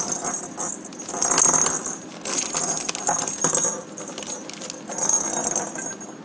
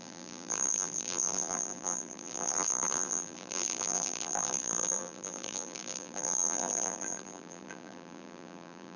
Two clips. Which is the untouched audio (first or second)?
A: first